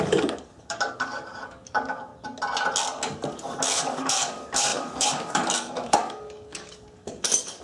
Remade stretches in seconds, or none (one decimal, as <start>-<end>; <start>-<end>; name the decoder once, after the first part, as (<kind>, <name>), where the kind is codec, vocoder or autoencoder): 0.0-2.1 (codec, DAC); 3.6-7.6